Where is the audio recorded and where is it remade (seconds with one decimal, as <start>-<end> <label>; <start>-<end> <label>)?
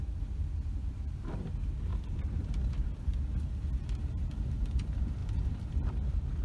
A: 0.0-0.8 recorded; 0.8-1.5 remade; 1.5-1.9 recorded; 1.9-3.1 remade; 3.1-5.2 recorded; 5.2-5.9 remade; 5.9-6.4 recorded